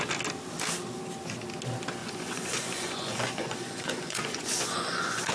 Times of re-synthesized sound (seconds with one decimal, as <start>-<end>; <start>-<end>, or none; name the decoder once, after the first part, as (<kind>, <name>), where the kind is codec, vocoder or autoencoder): 2.0-5.3 (vocoder, Vocos)